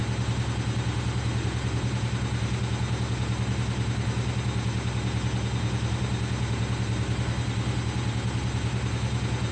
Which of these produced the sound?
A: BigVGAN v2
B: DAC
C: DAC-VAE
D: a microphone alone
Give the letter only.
D